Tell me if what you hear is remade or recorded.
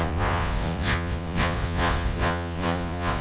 remade